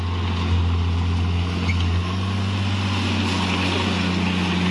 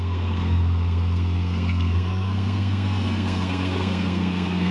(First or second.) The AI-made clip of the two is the second